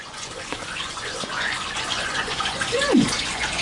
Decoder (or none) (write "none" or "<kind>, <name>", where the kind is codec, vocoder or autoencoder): vocoder, Vocos